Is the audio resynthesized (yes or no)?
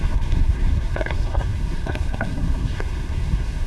yes